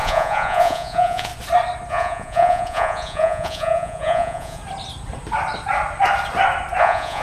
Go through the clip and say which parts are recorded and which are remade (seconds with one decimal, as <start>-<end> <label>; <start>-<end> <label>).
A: 0.0-1.3 remade; 1.3-1.9 recorded; 1.9-4.6 remade; 4.6-6.8 recorded; 6.8-7.2 remade

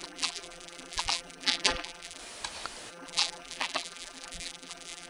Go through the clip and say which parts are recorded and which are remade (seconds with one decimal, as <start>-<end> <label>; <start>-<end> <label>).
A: 0.0-2.2 remade; 2.2-2.9 recorded; 2.9-5.1 remade